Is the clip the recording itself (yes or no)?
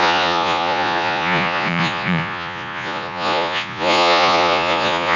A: no